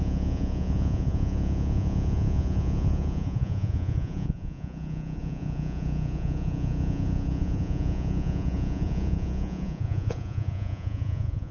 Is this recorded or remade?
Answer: remade